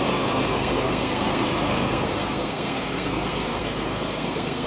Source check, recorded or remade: remade